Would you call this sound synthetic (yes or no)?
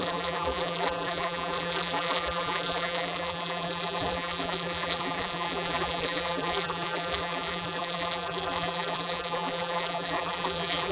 yes